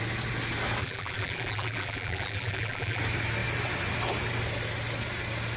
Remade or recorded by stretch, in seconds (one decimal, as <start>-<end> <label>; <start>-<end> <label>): 0.0-0.8 recorded; 0.8-3.0 remade; 3.0-5.6 recorded